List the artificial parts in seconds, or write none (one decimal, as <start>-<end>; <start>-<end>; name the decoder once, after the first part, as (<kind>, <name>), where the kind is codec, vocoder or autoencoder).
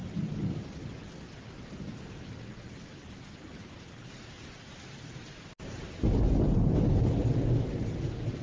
0.0-0.6 (vocoder, BigVGAN v2)